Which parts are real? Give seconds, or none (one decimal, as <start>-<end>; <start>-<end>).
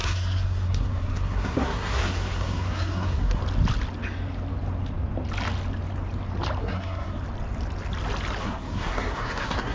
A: 3.4-6.6; 7.2-8.4